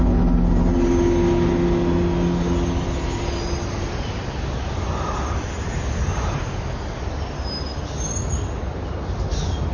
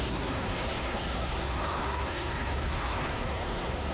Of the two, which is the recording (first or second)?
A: first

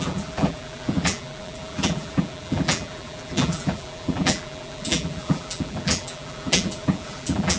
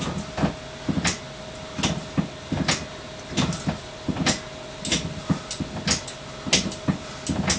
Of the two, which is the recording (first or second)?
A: second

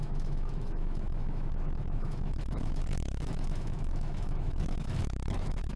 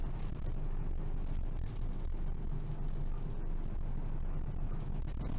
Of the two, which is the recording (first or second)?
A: second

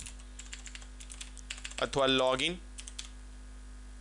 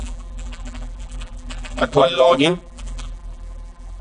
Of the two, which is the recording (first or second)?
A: first